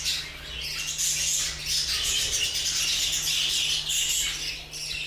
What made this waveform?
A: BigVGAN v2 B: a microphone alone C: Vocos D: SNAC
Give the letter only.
B